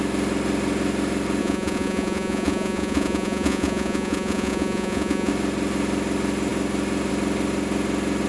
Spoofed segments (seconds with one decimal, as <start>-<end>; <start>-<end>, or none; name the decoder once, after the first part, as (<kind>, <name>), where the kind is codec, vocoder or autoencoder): 1.4-5.3 (vocoder, Vocos)